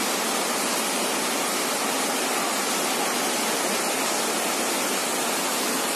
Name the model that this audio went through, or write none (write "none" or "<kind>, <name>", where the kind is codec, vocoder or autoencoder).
none